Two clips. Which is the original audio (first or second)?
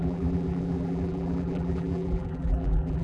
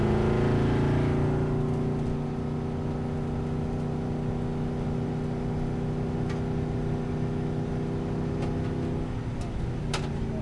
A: second